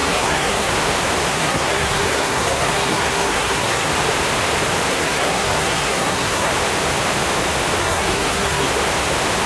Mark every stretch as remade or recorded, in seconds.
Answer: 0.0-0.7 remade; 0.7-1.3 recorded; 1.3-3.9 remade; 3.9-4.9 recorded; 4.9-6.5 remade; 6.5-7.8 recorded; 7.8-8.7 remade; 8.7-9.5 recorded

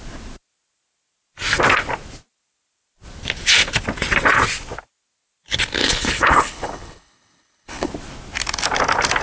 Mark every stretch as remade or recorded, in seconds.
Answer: 0.0-5.8 recorded; 5.8-7.9 remade; 7.9-9.2 recorded

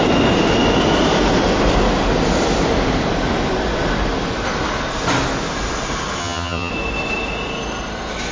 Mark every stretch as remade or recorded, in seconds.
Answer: 0.0-6.2 recorded; 6.2-6.7 remade; 6.7-8.3 recorded

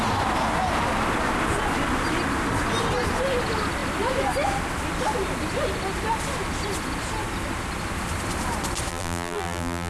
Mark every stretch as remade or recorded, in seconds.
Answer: 0.0-8.9 recorded; 8.9-9.9 remade